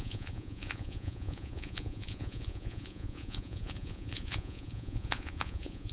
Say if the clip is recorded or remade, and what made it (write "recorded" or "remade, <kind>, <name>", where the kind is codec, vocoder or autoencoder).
remade, vocoder, Vocos